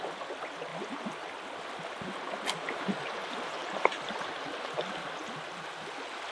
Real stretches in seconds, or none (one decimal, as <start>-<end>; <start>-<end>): 0.0-6.3